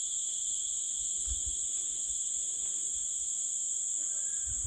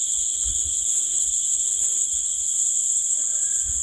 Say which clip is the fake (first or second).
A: second